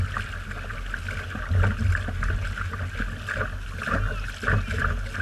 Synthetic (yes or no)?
no